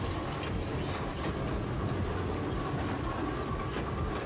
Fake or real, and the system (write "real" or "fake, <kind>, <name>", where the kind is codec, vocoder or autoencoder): real